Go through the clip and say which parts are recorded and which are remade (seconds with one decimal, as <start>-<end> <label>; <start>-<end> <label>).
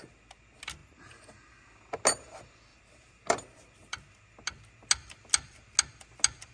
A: 0.0-2.7 recorded; 2.7-4.0 remade; 4.0-6.5 recorded